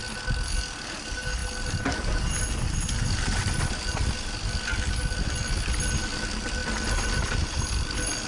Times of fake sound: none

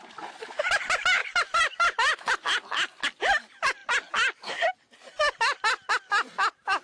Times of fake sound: none

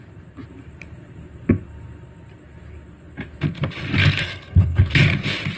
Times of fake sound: 4.0-4.9 (codec, SNAC)

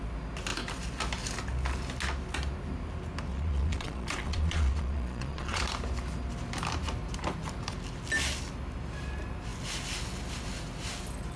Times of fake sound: 3.3-5.6 (vocoder, Vocos)